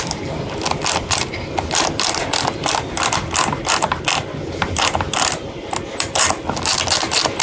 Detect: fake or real real